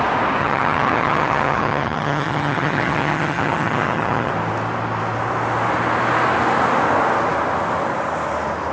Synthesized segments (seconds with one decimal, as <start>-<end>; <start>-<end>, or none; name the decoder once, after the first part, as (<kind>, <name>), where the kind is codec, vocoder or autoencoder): 0.4-4.3 (vocoder, HiFi-GAN)